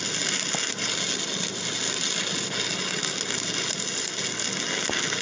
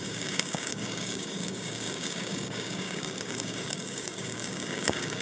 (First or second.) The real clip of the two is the first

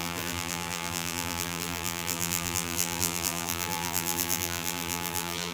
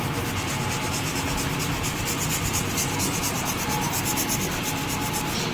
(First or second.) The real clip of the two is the second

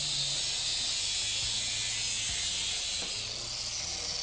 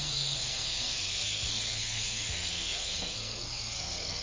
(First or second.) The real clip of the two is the first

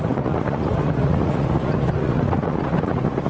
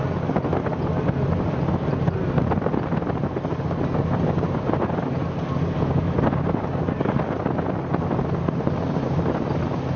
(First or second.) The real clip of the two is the second